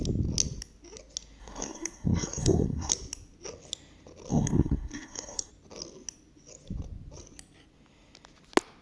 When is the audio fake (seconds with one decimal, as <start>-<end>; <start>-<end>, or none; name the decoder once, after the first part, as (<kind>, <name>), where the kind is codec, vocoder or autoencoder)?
1.4-2.9 (codec, SNAC); 4.3-5.5